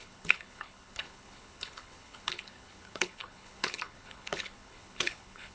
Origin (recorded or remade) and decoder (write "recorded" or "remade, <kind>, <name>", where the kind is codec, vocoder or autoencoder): remade, codec, HILCodec